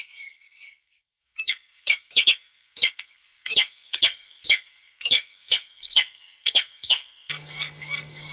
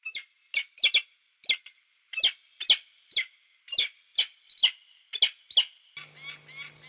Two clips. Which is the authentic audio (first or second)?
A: second